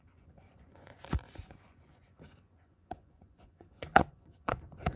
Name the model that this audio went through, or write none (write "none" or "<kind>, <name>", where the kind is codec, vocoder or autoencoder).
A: vocoder, Vocos